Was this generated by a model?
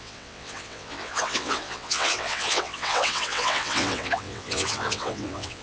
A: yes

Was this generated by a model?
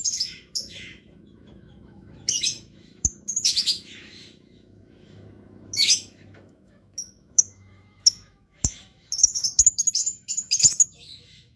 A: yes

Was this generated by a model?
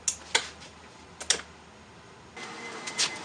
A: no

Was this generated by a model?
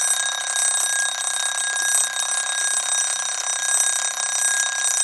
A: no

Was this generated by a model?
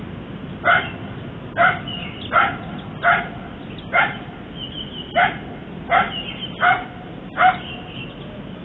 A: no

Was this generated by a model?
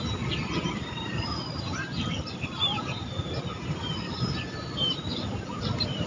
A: no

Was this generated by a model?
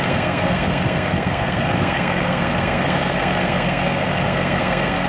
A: yes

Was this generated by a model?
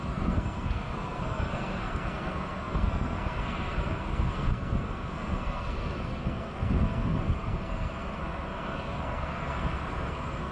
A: yes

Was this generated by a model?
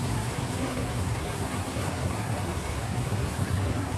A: yes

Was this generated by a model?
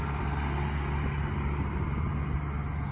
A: no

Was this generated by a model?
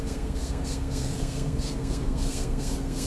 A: yes